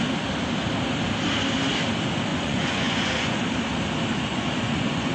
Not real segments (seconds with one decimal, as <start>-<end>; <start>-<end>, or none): 2.3-3.4; 4.3-5.1